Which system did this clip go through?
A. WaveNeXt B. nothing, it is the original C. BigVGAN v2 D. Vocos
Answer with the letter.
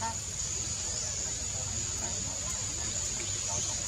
B